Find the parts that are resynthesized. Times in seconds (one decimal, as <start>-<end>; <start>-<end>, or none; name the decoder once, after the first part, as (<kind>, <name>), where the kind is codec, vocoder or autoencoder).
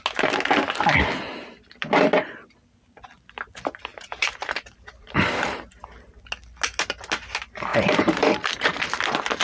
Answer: 3.9-6.2 (vocoder, BigVGAN v2); 7.7-9.0